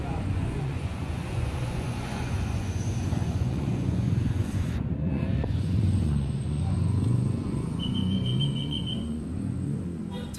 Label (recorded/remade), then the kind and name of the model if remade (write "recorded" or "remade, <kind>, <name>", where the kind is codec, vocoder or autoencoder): remade, vocoder, Vocos